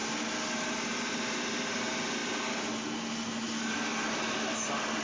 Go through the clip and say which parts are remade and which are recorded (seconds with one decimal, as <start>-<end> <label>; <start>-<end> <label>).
0.0-5.0 recorded